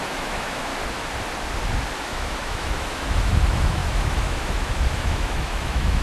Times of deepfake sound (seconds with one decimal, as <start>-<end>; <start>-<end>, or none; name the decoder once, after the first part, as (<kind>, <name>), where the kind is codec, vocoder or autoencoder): 0.0-0.7 (autoencoder, DAC-VAE); 2.0-6.0